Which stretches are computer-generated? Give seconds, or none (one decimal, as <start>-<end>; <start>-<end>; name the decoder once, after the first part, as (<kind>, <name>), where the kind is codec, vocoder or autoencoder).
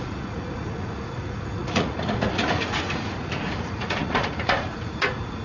0.0-5.4 (vocoder, Vocos)